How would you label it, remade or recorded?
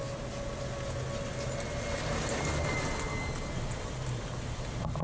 recorded